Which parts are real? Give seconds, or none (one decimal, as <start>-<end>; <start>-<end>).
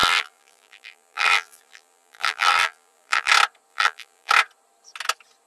3.3-3.7; 4.3-5.5